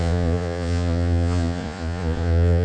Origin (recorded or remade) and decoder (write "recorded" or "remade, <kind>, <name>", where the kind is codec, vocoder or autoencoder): remade, vocoder, Vocos